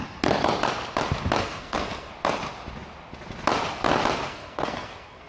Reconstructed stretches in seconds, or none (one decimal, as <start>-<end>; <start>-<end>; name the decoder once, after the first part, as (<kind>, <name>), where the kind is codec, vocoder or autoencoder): 1.4-2.1 (codec, SNAC); 4.3-5.3